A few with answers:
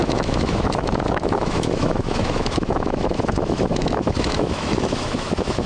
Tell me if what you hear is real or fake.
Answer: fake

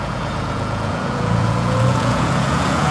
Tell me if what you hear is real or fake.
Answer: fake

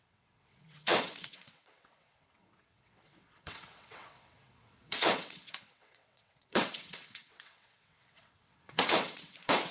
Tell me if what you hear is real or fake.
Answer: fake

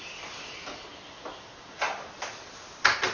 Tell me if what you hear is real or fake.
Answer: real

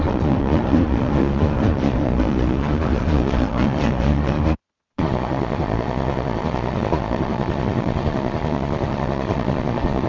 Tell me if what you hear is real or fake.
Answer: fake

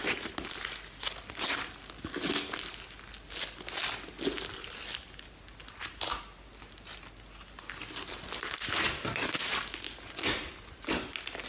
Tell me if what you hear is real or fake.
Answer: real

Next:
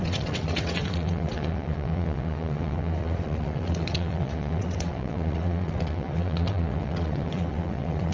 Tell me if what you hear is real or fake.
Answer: fake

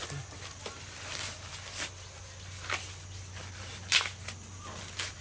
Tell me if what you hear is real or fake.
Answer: real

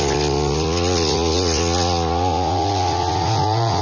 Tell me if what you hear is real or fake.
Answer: fake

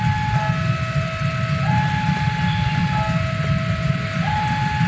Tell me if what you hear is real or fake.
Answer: real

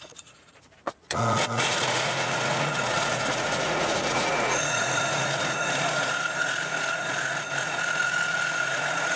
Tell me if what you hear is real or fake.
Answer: fake